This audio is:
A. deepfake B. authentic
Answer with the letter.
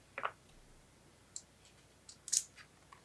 B